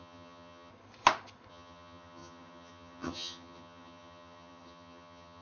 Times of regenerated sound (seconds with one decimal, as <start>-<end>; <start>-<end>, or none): 0.0-0.7; 1.5-5.4